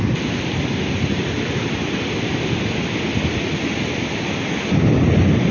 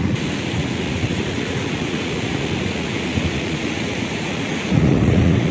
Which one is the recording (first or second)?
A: first